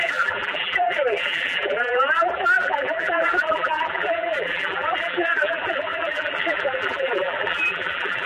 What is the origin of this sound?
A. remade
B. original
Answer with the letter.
A